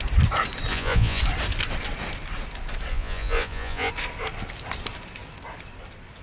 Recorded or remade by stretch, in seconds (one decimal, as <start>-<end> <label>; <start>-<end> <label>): 0.0-0.7 recorded; 0.7-1.2 remade; 1.2-2.9 recorded; 2.9-3.9 remade; 3.9-6.2 recorded